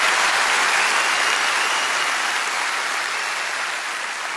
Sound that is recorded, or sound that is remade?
recorded